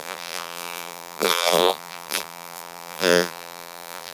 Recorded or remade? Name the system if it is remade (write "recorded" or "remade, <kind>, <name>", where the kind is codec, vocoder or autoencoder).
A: remade, vocoder, BigVGAN v2